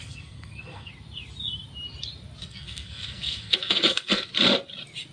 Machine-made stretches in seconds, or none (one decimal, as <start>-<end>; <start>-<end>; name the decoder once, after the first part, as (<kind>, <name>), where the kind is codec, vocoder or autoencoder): 0.0-0.9 (codec, SNAC); 2.4-4.3